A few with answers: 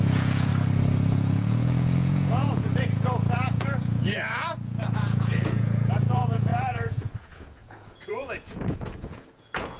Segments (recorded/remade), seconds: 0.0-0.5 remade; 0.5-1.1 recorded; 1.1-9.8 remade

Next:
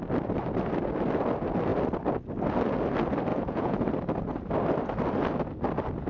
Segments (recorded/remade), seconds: 0.0-3.3 recorded; 3.3-3.9 remade; 3.9-6.1 recorded

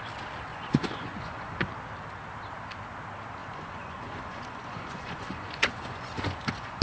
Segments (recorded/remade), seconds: 0.0-0.5 recorded; 0.5-1.6 remade; 1.6-3.4 recorded; 3.4-6.8 remade

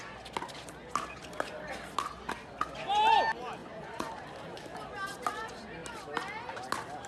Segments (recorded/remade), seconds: 0.0-3.6 recorded; 3.6-4.1 remade; 4.1-7.1 recorded

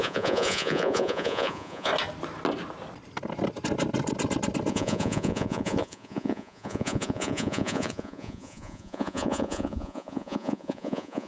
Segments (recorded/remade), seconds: 0.0-1.9 remade; 1.9-4.7 recorded; 4.7-11.3 remade

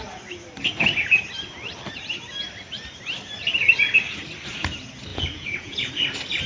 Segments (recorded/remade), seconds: 0.0-5.1 recorded; 5.1-5.9 remade; 5.9-6.5 recorded